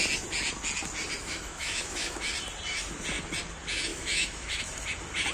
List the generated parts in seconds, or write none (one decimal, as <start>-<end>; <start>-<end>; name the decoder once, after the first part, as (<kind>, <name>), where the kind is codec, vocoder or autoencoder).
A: 1.2-2.2 (autoencoder, DAC-VAE); 3.9-4.6